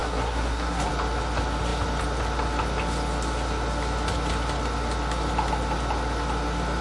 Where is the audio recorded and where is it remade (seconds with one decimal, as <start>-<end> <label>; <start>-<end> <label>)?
0.0-0.9 remade; 0.9-6.8 recorded